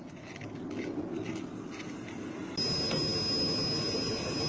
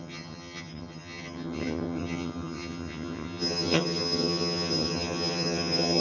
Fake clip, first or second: second